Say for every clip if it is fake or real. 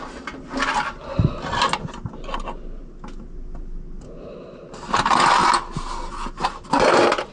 real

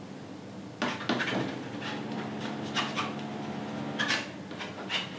real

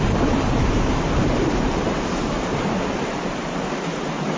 fake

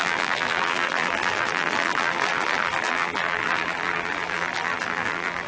fake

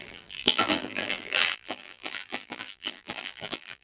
fake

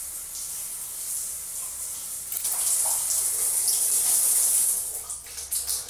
real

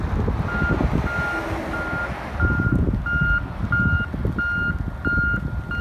real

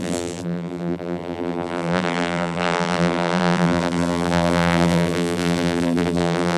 fake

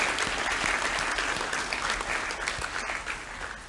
real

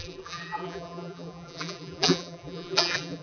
fake